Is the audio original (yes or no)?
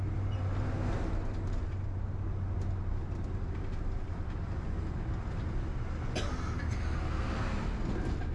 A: yes